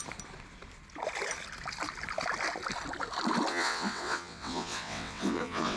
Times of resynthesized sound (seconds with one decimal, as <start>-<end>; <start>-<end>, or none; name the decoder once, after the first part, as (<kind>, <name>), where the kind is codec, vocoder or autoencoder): 3.5-5.8 (vocoder, WaveNeXt)